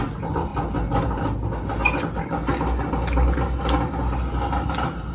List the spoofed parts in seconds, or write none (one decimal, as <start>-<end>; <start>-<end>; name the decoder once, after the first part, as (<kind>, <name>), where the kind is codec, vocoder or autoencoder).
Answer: none

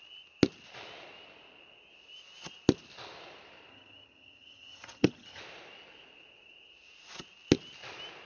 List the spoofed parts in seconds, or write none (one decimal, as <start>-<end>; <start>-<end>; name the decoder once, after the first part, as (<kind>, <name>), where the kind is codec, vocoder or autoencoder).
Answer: 3.7-5.4 (vocoder, HiFi-GAN)

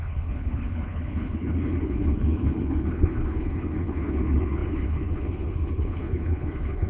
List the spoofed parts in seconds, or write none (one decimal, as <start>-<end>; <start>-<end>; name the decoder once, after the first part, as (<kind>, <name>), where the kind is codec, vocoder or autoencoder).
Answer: 0.0-6.9 (codec, HILCodec)

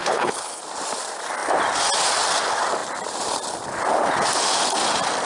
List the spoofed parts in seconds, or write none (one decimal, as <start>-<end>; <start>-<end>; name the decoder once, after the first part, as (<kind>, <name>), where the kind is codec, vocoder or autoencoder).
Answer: 0.0-0.6 (codec, HILCodec)

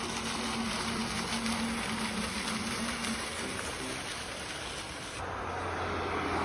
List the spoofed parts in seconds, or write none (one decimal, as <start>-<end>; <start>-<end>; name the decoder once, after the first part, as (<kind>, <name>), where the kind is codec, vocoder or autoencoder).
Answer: none